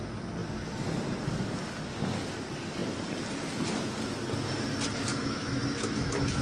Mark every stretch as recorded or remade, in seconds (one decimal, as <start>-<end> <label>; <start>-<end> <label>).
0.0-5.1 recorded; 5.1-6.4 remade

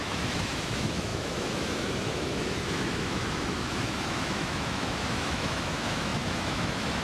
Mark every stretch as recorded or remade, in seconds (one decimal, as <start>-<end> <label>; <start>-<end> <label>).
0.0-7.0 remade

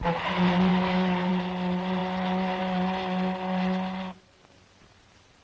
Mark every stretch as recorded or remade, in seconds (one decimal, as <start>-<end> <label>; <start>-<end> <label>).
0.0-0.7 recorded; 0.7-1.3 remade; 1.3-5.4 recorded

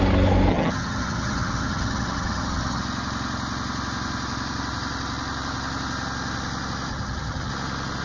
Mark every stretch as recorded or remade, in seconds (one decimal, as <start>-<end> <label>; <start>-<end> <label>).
0.0-0.5 recorded; 0.5-2.8 remade; 2.8-6.9 recorded; 6.9-7.5 remade; 7.5-8.0 recorded

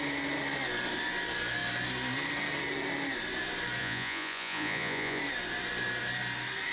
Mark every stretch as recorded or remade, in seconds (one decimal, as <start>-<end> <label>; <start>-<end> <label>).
0.0-3.8 recorded; 3.8-5.2 remade; 5.2-6.7 recorded

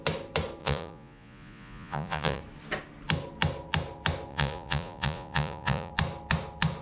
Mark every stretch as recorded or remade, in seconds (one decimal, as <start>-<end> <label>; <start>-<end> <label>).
0.0-0.6 recorded; 0.6-2.4 remade; 2.4-4.3 recorded; 4.3-5.9 remade; 5.9-6.8 recorded

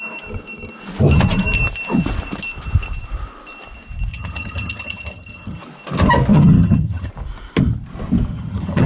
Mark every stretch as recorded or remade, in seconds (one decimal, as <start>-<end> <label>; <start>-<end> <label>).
0.0-4.1 recorded; 4.1-5.6 remade; 5.6-6.3 recorded; 6.3-7.1 remade; 7.1-8.3 recorded; 8.3-8.9 remade